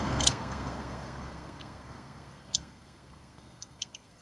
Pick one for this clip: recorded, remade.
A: remade